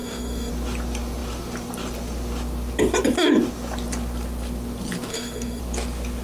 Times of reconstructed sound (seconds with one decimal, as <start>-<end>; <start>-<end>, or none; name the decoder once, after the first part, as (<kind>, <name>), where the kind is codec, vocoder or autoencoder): 0.0-0.5 (codec, DAC); 5.1-5.6